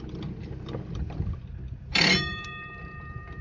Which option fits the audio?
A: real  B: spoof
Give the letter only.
B